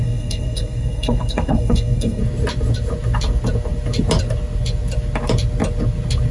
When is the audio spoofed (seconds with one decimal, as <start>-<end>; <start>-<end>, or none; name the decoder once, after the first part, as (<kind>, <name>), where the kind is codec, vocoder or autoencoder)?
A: 0.0-2.2 (codec, SNAC)